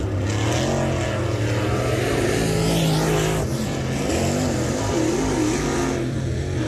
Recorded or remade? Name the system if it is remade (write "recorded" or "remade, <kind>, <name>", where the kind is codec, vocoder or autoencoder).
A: recorded